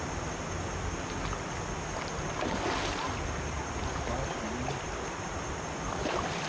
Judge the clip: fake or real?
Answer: real